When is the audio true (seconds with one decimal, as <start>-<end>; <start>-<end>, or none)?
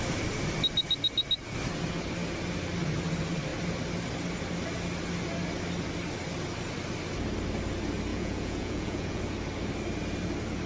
0.0-8.1; 9.2-10.7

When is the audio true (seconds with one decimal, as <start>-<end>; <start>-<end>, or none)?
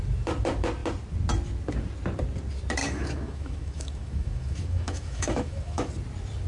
0.0-2.8; 5.9-6.5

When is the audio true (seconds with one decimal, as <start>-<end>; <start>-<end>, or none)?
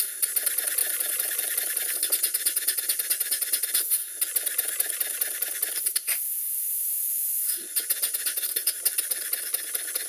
0.0-0.8; 2.2-8.6; 9.1-10.1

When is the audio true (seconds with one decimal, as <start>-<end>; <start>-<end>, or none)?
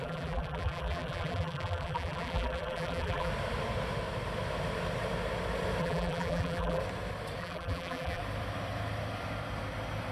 3.3-5.8; 6.8-7.4; 8.2-10.1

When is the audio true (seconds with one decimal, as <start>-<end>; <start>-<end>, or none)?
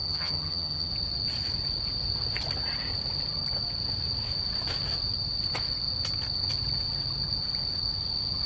0.9-8.5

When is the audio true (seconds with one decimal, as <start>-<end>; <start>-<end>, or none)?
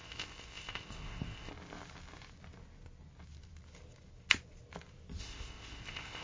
1.5-5.2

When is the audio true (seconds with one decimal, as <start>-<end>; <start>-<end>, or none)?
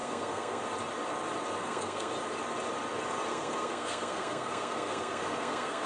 0.6-1.6; 2.1-3.3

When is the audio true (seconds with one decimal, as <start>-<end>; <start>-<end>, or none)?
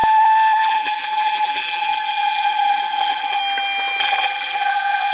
3.4-4.0